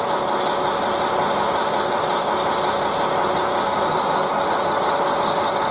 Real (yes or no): yes